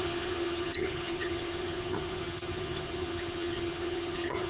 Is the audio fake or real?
fake